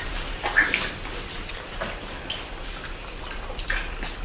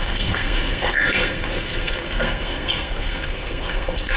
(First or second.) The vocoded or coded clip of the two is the second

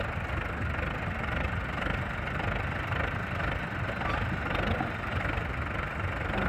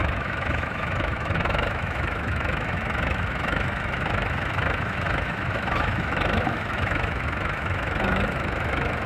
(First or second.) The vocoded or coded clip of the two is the second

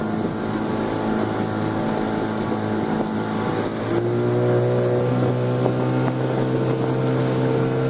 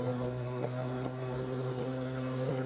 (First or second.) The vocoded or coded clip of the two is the second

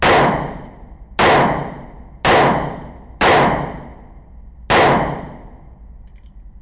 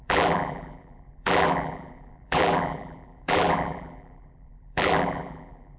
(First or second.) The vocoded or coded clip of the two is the second